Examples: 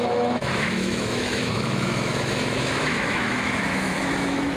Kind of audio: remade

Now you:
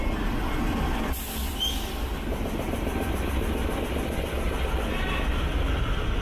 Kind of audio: remade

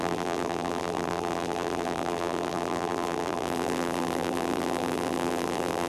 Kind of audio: remade